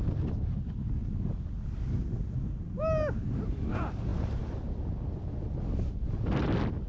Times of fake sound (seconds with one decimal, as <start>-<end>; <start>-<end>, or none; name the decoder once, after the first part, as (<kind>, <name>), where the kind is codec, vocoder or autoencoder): none